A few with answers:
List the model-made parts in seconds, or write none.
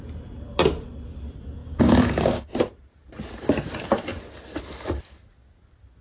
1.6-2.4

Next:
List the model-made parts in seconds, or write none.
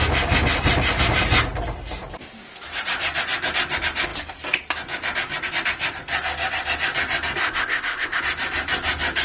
7.4-8.2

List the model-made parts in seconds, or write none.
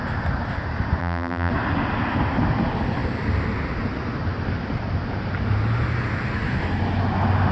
1.0-1.5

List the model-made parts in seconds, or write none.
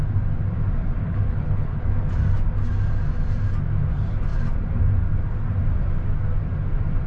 1.0-1.8